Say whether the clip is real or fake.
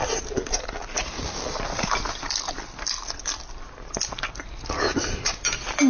real